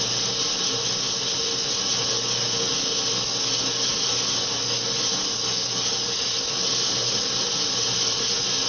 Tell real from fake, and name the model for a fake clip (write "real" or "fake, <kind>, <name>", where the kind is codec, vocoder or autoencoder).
real